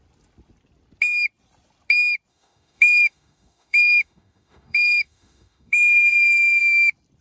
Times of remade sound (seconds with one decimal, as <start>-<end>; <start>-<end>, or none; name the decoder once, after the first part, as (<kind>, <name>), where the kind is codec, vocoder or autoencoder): 2.3-6.6 (autoencoder, DAC-VAE)